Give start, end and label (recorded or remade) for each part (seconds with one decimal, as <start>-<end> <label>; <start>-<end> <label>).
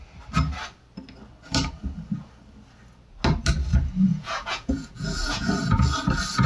0.0-4.1 recorded; 4.1-5.5 remade; 5.5-6.5 recorded